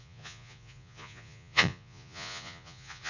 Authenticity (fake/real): fake